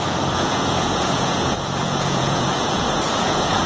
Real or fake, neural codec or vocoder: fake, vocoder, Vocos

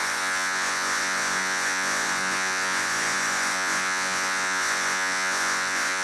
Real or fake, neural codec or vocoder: fake, vocoder, Vocos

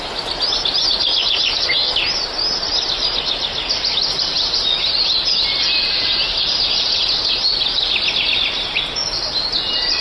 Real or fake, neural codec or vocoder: real